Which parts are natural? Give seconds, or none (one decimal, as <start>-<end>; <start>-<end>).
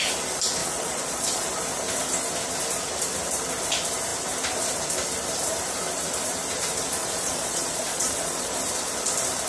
0.0-0.6; 1.5-7.0; 8.5-9.5